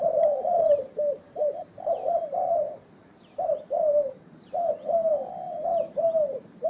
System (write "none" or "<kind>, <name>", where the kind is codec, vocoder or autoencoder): vocoder, BigVGAN v2